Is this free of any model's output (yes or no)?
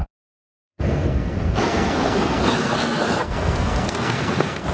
no